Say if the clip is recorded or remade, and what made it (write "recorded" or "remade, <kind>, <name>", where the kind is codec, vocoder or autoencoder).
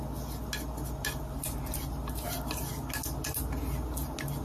recorded